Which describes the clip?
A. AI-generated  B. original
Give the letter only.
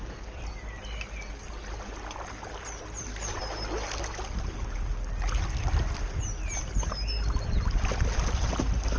B